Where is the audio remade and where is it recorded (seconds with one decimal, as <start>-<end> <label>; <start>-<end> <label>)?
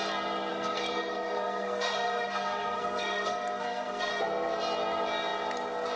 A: 0.0-0.5 recorded; 0.5-4.1 remade; 4.1-6.0 recorded